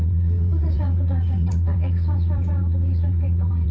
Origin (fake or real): fake